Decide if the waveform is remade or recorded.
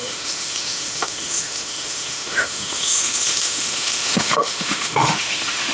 remade